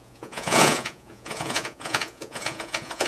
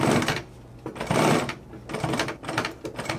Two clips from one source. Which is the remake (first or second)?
first